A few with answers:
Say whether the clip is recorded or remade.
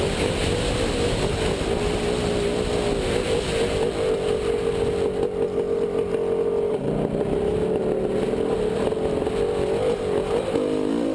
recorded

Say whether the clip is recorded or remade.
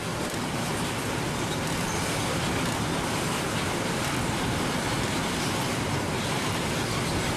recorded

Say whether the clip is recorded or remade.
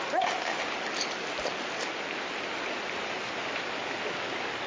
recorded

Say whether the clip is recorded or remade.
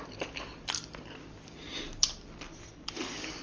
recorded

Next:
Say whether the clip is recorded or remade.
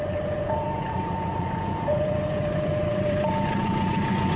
remade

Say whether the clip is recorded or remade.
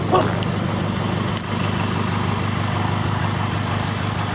recorded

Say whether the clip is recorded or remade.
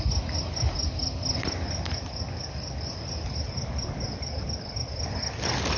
recorded